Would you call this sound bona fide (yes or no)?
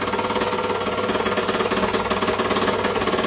yes